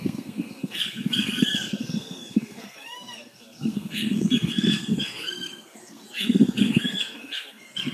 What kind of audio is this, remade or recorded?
remade